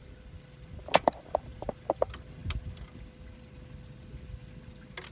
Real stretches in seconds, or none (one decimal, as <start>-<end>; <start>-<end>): 0.0-5.1